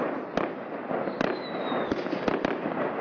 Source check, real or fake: real